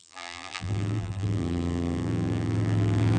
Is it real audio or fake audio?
fake